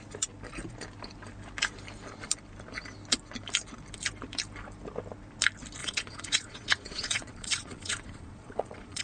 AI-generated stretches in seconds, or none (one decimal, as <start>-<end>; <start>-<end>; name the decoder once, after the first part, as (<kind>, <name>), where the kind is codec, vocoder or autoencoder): 5.8-9.0 (vocoder, Vocos)